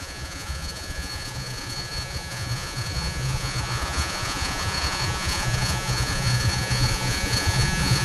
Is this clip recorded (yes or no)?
no